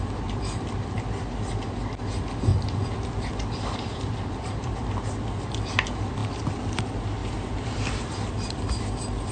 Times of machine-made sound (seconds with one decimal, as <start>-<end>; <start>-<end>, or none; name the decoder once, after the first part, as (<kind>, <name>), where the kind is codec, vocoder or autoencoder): 2.5-4.7 (vocoder, BigVGAN v2); 7.2-8.0